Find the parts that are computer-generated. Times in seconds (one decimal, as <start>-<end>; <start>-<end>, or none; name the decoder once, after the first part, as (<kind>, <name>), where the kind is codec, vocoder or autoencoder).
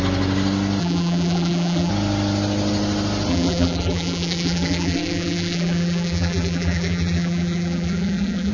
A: 0.8-1.9 (vocoder, BigVGAN v2); 3.3-8.5